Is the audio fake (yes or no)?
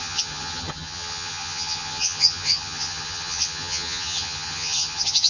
yes